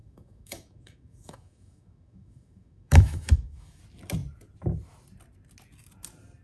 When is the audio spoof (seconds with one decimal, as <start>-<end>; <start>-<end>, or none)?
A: 0.0-3.8